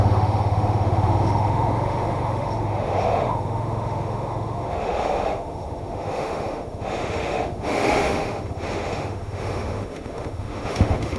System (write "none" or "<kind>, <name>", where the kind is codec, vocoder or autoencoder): autoencoder, DAC-VAE